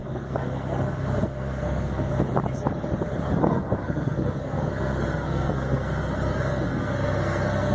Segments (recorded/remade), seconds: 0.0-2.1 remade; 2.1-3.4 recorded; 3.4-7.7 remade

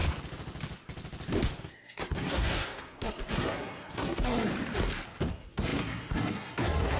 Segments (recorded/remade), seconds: 0.0-1.6 recorded; 1.6-4.5 remade; 4.5-5.3 recorded; 5.3-7.0 remade

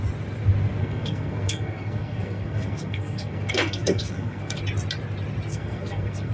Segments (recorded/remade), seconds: 0.0-0.8 recorded; 0.8-4.6 remade; 4.6-5.5 recorded; 5.5-6.3 remade

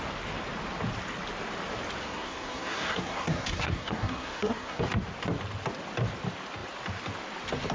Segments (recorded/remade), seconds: 0.0-2.0 recorded; 2.0-4.8 remade; 4.8-7.7 recorded

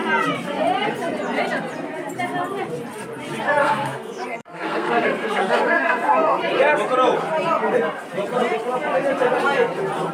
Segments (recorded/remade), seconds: 0.0-3.6 recorded; 3.6-6.4 remade; 6.4-10.1 recorded

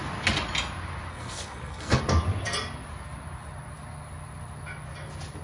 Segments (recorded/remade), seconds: 0.0-1.1 recorded; 1.1-2.0 remade; 2.0-5.4 recorded

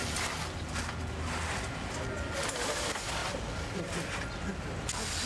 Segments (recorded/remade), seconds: 0.0-5.3 recorded

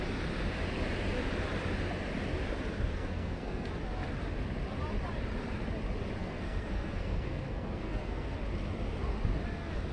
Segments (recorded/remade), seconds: 0.0-2.9 recorded; 2.9-3.7 remade; 3.7-6.2 recorded; 6.2-8.4 remade; 8.4-9.9 recorded